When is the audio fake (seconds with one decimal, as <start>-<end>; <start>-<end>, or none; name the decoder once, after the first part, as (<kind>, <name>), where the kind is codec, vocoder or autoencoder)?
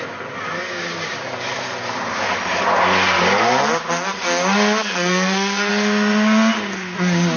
4.8-5.7 (codec, SNAC)